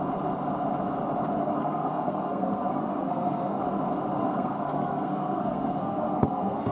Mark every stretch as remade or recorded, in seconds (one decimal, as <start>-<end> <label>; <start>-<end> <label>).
0.0-1.4 recorded; 1.4-3.6 remade; 3.6-4.2 recorded; 4.2-6.7 remade